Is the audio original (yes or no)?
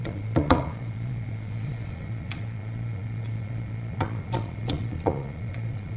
no